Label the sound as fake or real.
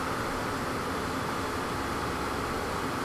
real